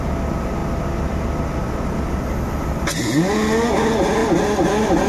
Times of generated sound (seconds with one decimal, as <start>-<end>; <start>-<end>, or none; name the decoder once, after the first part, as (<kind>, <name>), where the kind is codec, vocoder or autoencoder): none